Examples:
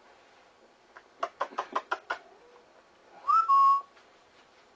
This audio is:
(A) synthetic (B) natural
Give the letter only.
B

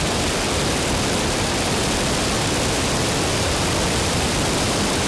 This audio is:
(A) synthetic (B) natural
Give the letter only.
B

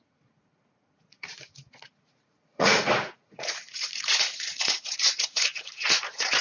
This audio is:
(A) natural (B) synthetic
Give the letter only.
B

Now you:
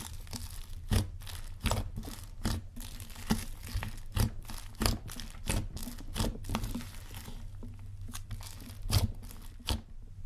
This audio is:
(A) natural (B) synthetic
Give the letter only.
A